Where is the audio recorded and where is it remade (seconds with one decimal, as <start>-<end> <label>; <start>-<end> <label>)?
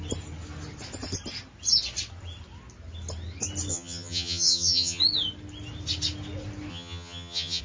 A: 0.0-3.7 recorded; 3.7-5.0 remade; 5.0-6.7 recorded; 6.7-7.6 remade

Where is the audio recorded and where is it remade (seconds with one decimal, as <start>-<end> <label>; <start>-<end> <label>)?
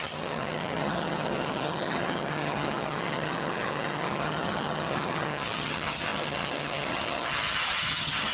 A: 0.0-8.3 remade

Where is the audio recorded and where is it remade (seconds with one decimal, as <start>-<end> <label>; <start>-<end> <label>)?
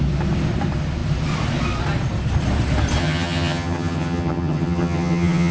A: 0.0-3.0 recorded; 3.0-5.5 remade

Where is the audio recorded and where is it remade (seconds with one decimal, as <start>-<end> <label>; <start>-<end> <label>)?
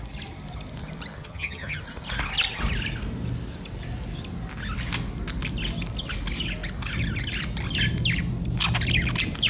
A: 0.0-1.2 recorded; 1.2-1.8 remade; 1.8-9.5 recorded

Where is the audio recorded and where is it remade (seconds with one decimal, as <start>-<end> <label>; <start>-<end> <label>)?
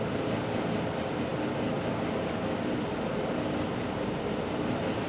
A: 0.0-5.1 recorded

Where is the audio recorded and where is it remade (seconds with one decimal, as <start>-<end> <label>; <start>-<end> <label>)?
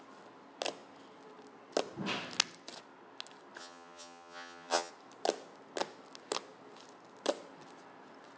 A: 0.0-3.6 recorded; 3.6-4.9 remade; 4.9-8.4 recorded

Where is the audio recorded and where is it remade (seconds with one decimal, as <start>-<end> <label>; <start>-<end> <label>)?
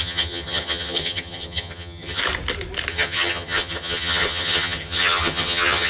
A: 0.0-2.2 remade; 2.2-2.9 recorded; 2.9-5.9 remade